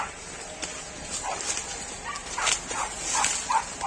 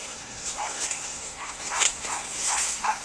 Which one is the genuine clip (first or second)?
first